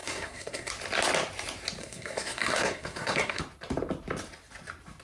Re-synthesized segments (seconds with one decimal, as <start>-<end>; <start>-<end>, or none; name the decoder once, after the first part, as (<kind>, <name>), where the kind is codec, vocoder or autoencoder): 0.0-0.7 (codec, SNAC); 1.8-3.4